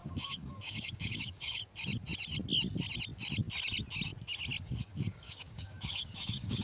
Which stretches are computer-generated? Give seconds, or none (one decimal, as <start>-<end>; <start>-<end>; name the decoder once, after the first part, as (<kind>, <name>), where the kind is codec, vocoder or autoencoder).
0.0-1.6 (codec, DAC); 4.6-6.6